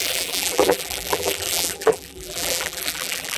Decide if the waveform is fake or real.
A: fake